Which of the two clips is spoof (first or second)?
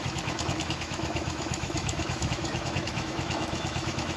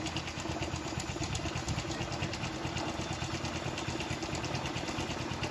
first